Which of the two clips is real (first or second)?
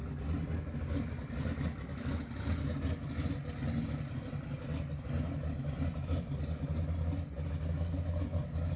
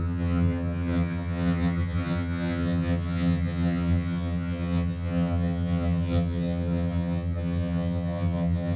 first